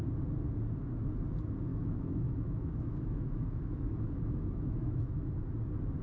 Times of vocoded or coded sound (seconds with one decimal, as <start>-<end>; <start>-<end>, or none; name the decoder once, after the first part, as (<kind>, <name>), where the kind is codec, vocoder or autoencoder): 1.7-5.3 (autoencoder, DAC-VAE)